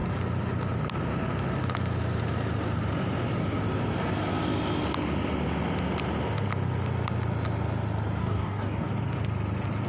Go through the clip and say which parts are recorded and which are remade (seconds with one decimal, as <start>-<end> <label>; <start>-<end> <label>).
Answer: 0.0-8.2 recorded; 8.2-8.9 remade; 8.9-9.9 recorded

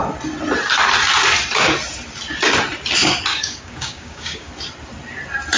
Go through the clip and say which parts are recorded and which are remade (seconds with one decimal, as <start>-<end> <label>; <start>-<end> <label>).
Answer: 0.0-3.3 recorded; 3.3-4.5 remade; 4.5-5.6 recorded

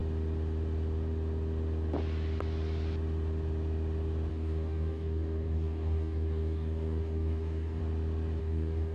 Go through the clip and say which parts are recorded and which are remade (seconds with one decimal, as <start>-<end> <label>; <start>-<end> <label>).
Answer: 0.0-4.3 recorded; 4.3-7.8 remade; 7.8-8.4 recorded; 8.4-8.9 remade